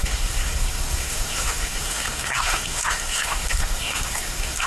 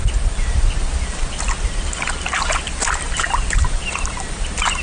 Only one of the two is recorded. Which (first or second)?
second